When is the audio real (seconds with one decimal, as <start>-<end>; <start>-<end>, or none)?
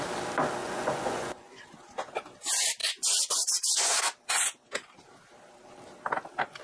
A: 0.0-0.6; 1.7-2.8; 4.0-6.6